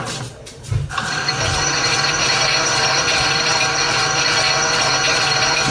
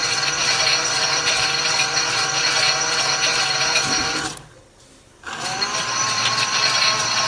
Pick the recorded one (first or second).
second